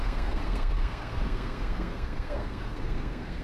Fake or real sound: fake